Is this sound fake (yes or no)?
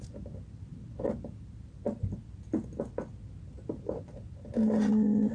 no